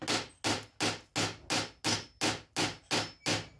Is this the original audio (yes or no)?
yes